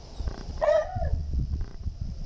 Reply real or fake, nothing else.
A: fake